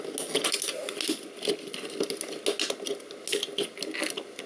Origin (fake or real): real